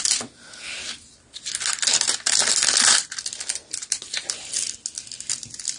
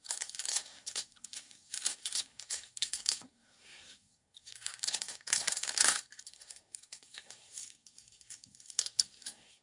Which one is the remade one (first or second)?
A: second